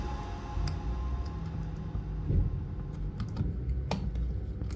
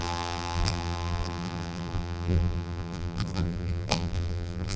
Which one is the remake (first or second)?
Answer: second